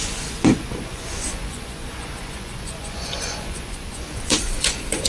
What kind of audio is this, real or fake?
fake